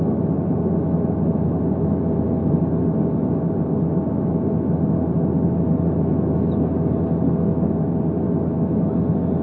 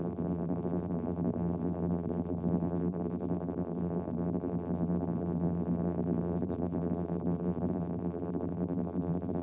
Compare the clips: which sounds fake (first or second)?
second